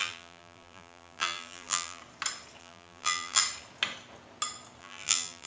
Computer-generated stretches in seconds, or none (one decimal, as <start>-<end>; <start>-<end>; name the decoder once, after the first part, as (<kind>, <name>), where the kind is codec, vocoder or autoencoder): 0.0-2.0 (vocoder, BigVGAN v2); 2.6-3.4; 4.8-5.5